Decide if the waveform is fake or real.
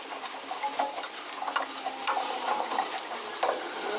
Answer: real